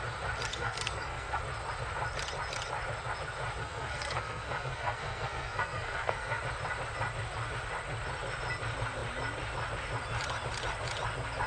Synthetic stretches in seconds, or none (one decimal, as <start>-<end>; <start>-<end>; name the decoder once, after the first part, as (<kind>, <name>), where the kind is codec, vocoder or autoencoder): 0.5-1.4 (codec, SNAC); 3.6-6.4